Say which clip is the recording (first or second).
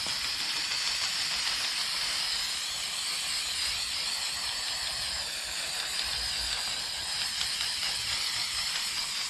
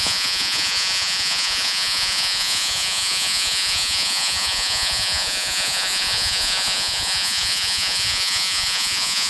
first